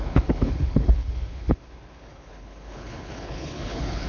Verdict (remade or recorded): remade